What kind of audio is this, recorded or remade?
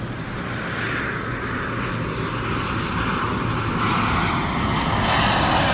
recorded